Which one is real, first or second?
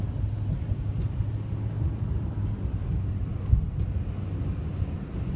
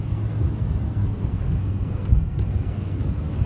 first